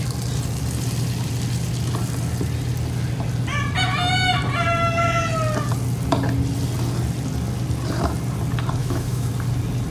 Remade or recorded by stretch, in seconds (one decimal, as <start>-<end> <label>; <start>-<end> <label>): 0.0-8.8 recorded; 8.8-9.3 remade; 9.3-9.9 recorded

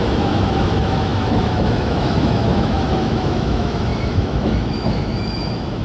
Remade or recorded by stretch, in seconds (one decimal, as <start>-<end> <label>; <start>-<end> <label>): 0.0-5.8 remade

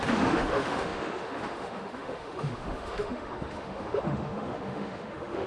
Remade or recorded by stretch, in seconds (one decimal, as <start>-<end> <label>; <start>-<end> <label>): 0.0-5.5 remade

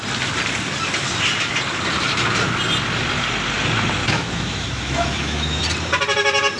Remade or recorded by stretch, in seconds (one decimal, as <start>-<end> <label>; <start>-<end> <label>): 0.0-4.0 recorded; 4.0-5.6 remade; 5.6-6.6 recorded